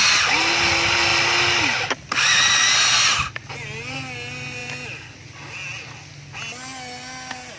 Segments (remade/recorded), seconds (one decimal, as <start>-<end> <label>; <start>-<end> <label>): 0.0-1.1 recorded; 1.1-2.5 remade; 2.5-7.6 recorded